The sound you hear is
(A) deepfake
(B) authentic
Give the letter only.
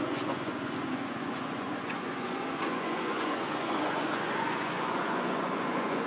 A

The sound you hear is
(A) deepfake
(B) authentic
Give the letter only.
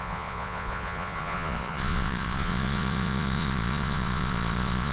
A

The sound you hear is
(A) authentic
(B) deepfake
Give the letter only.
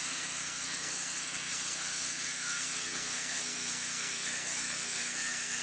B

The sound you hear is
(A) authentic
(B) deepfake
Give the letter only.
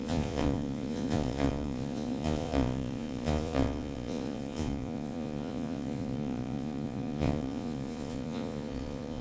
B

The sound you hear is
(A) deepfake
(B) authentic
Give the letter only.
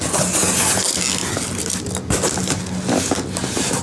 B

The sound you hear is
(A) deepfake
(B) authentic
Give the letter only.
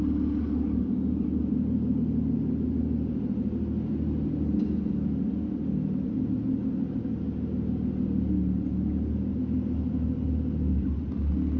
B